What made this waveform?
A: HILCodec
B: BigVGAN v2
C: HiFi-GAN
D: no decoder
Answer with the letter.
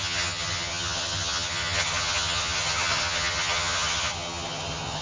C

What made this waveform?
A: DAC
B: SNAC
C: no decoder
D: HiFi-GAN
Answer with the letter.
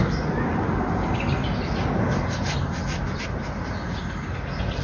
C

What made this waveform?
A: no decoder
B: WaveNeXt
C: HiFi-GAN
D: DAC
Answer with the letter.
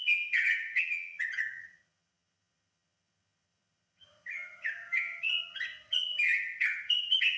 C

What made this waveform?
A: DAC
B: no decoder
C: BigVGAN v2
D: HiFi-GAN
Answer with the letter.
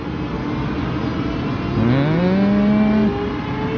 B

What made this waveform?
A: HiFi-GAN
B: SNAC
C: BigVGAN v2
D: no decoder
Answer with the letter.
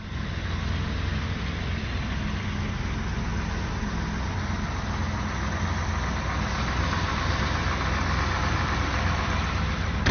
D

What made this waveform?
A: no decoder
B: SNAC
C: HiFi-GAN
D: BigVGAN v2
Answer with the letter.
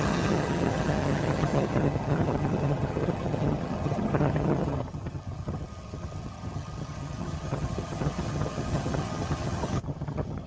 C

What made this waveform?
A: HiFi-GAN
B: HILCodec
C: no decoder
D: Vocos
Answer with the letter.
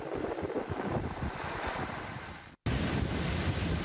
C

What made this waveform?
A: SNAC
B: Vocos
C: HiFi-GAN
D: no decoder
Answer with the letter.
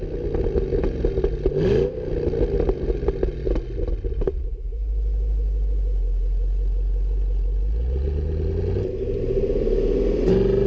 D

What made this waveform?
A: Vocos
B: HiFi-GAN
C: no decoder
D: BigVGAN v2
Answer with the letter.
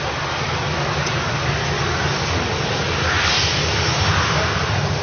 C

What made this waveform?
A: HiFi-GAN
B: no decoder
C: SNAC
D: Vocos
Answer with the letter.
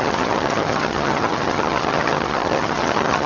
A